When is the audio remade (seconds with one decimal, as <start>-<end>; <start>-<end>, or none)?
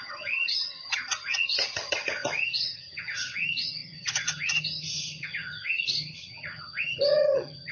0.0-7.7